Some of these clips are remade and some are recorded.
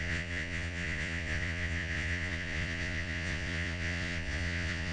remade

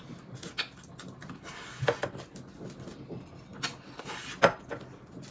recorded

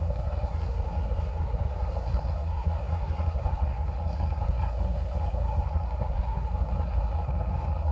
remade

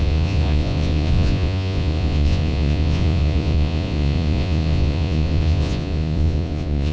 remade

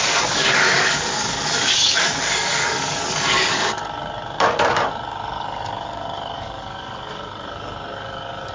remade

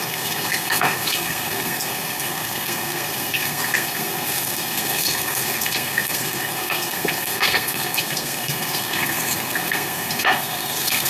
remade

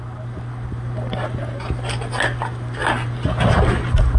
remade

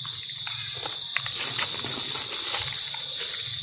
recorded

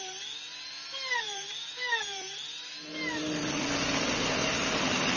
recorded